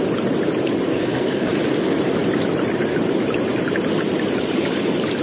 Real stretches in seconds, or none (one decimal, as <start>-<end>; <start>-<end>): 0.0-0.9; 1.5-5.2